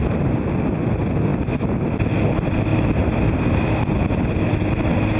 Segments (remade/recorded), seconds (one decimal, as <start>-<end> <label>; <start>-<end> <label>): 0.0-2.7 recorded; 2.7-4.8 remade; 4.8-5.2 recorded